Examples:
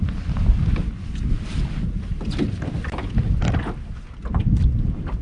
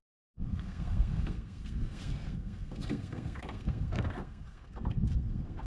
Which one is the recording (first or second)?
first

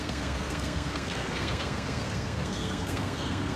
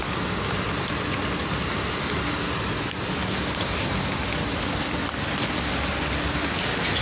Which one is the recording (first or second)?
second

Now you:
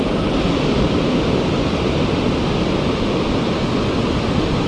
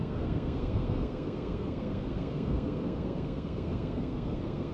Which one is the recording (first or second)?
first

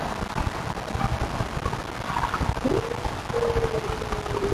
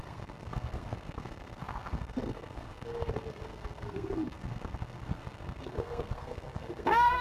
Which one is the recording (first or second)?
first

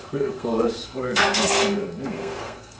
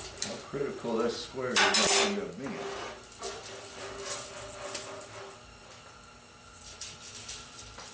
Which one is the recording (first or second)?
second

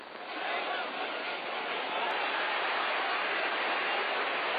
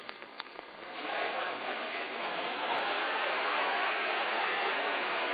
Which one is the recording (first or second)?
first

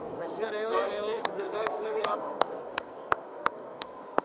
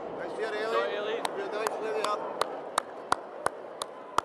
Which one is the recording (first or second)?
second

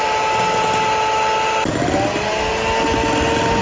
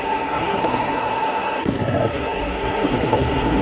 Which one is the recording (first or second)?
first